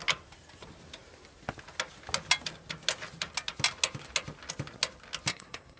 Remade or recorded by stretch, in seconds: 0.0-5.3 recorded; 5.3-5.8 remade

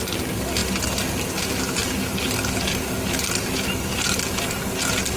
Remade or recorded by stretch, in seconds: 0.0-5.2 recorded

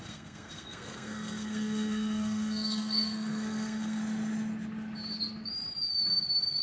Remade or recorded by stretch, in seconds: 0.0-4.0 remade; 4.0-6.6 recorded